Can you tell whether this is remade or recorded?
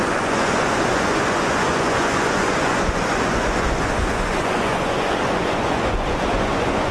remade